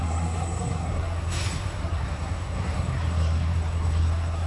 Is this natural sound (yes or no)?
no